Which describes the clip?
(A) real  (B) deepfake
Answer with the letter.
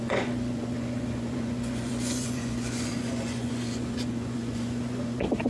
B